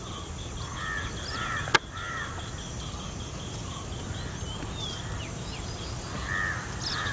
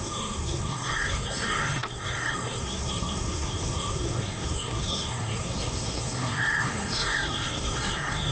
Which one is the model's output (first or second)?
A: second